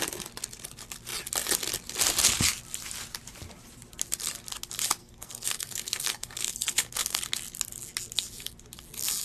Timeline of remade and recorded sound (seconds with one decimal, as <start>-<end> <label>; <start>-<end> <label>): 0.0-5.0 recorded; 5.0-7.2 remade; 7.2-9.2 recorded